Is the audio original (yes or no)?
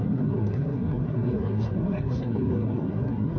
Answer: no